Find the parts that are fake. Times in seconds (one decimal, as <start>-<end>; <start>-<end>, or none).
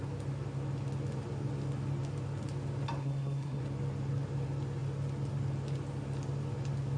3.0-3.6